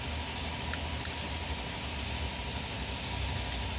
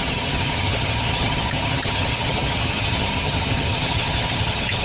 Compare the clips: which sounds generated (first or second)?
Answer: second